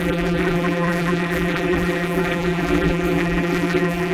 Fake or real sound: fake